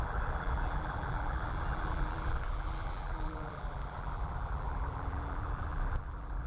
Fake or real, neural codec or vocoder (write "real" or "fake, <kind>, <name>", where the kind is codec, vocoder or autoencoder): fake, vocoder, BigVGAN v2